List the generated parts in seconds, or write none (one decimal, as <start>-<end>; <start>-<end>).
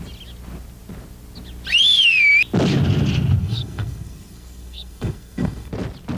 3.4-5.7